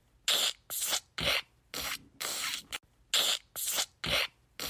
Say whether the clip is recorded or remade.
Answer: recorded